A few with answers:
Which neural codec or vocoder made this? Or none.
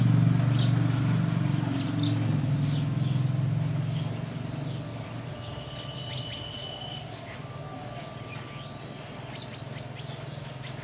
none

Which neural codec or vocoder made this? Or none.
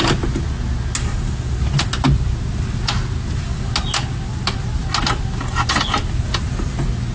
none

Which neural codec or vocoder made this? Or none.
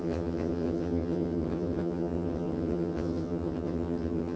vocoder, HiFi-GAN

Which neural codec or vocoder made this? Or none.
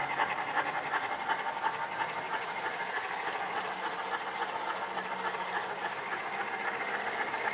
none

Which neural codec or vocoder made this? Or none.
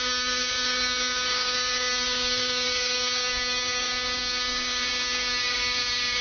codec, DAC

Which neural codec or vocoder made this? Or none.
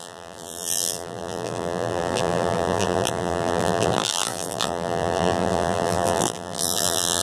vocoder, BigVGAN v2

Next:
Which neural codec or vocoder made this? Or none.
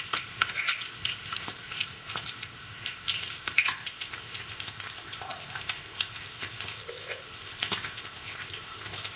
codec, ZipCodec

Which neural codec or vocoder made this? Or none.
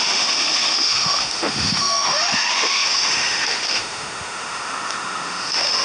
autoencoder, DAC-VAE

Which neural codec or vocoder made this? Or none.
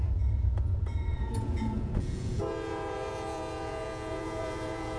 vocoder, Vocos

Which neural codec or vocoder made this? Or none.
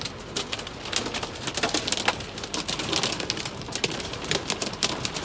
none